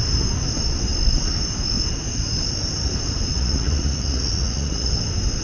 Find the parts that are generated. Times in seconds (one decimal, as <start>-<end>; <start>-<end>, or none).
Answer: 3.3-4.9